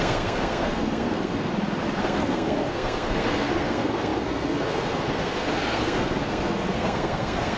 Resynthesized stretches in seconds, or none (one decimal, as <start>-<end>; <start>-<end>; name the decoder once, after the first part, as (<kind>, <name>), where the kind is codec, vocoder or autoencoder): 0.0-1.5 (codec, SNAC); 2.0-7.6

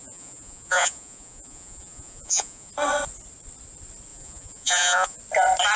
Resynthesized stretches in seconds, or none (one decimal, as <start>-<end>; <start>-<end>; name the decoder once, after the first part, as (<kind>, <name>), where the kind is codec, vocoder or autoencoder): 0.0-2.7 (vocoder, Vocos); 4.1-5.2

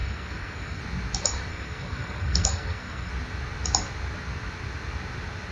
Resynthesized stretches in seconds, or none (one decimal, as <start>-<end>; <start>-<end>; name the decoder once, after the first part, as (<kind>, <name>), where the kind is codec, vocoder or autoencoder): 0.0-0.8 (codec, SNAC); 1.5-3.1